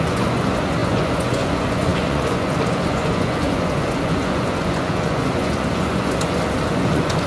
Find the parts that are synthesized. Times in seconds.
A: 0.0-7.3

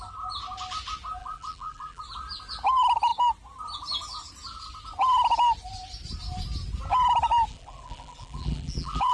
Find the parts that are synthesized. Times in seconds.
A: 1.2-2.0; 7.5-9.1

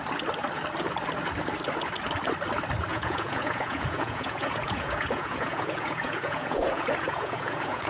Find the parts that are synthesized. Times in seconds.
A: 2.9-7.9

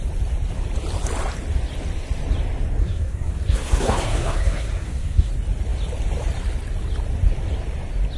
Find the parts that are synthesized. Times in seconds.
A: 2.8-5.3

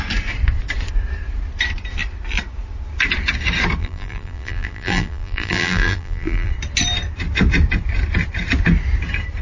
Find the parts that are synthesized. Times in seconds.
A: 3.8-6.5